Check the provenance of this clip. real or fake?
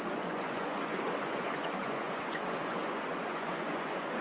fake